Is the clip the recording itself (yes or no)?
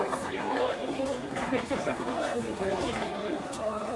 no